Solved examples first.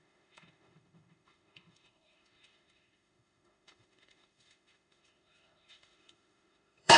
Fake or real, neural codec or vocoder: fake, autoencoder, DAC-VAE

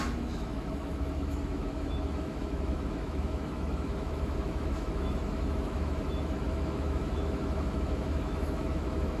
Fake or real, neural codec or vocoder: fake, autoencoder, DAC-VAE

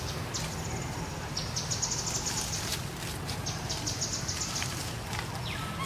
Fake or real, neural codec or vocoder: real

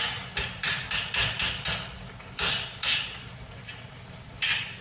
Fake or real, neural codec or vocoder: real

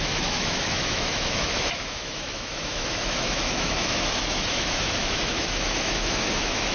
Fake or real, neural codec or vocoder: fake, autoencoder, DAC-VAE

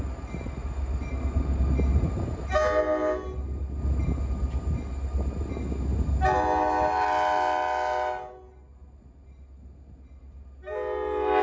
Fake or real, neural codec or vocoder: real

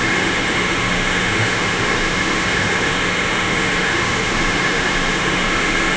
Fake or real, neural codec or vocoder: fake, autoencoder, DAC-VAE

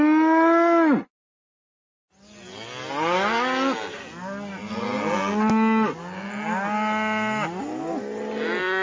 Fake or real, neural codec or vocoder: real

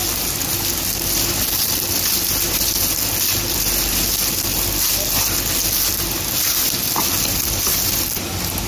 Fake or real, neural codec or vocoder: real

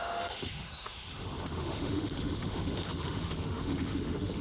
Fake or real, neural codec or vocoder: fake, autoencoder, DAC-VAE